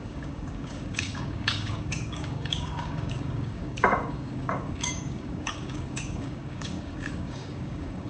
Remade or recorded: remade